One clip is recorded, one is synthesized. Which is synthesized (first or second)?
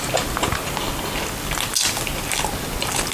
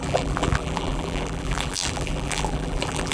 second